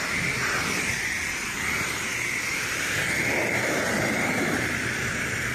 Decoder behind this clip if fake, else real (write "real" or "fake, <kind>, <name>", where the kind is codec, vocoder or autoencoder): fake, vocoder, BigVGAN v2